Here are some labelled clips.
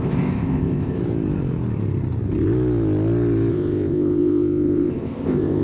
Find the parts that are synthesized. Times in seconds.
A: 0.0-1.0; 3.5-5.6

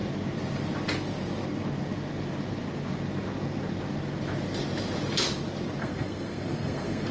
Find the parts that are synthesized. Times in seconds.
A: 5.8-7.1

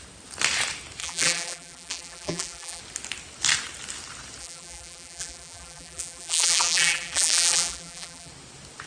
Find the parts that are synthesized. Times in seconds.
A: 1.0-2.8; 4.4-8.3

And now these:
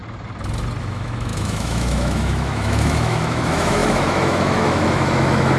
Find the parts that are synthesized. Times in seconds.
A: 0.8-5.6

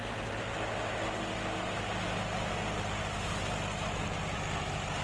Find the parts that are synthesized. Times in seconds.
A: none

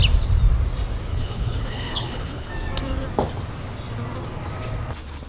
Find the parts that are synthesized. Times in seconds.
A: 1.1-2.5